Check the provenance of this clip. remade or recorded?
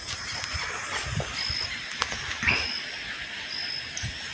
recorded